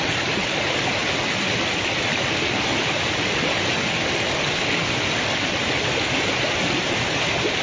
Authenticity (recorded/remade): recorded